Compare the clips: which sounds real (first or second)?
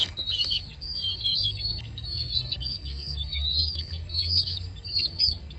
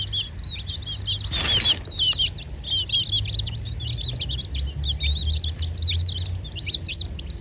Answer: second